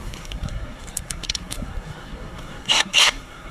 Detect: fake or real fake